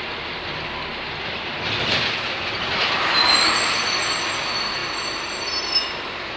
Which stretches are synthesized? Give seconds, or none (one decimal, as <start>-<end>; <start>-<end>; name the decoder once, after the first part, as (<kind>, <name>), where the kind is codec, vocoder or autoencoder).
none